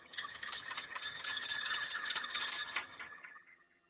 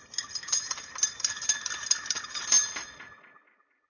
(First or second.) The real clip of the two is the second